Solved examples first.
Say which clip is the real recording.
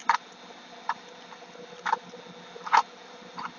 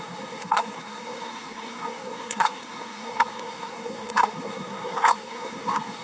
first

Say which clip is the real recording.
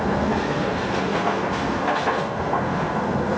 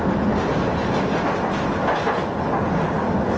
second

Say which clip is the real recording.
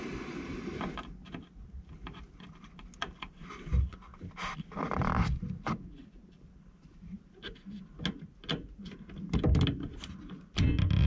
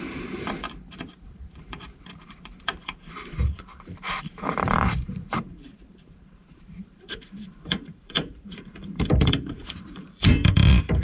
first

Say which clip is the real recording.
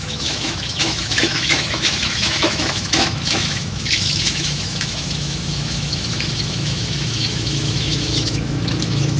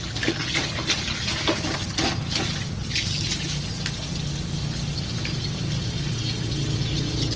second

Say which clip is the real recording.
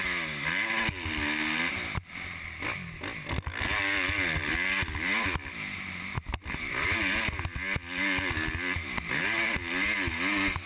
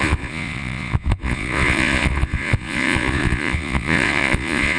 first